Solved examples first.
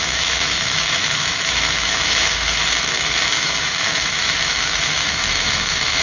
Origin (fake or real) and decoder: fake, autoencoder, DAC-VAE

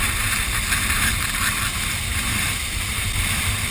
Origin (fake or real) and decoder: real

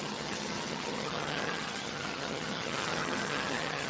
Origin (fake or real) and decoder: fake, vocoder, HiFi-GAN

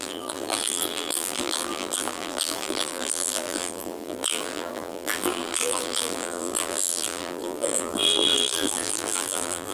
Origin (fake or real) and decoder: fake, vocoder, BigVGAN v2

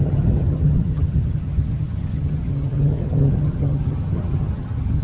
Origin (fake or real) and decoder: fake, vocoder, HiFi-GAN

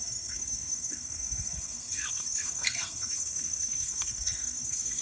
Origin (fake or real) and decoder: fake, codec, SNAC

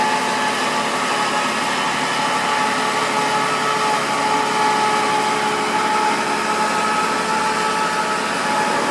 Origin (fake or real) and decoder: real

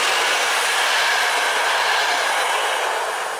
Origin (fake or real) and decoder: real